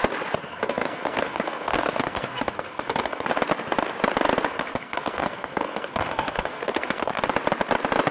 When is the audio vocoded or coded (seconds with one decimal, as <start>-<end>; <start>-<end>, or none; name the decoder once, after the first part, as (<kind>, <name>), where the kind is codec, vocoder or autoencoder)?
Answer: 0.4-3.3 (codec, SNAC); 4.5-7.2